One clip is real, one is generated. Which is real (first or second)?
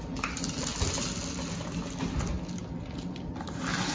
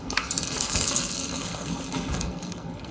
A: first